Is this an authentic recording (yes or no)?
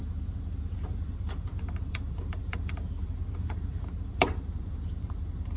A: no